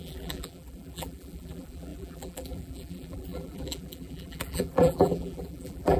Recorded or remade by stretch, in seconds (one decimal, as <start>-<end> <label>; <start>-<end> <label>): 0.0-6.0 remade

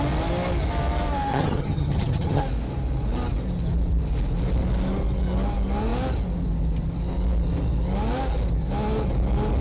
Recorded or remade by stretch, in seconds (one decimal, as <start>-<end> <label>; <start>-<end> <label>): 0.0-1.3 recorded; 1.3-2.4 remade; 2.4-9.6 recorded

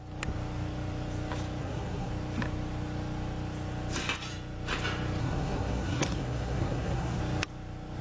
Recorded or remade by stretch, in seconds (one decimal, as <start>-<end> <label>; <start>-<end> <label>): 0.0-1.6 recorded; 1.6-2.1 remade; 2.1-5.2 recorded; 5.2-7.2 remade; 7.2-8.0 recorded

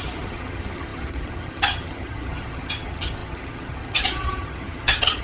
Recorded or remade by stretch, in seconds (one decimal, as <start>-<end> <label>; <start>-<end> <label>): 0.0-5.2 remade

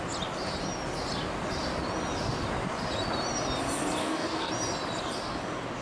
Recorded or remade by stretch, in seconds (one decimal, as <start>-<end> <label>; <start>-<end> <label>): 0.0-4.0 recorded; 4.0-4.5 remade; 4.5-5.8 recorded

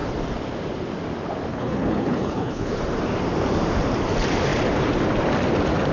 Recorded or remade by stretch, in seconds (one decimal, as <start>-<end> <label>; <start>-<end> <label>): 0.0-1.5 recorded; 1.5-2.7 remade; 2.7-5.9 recorded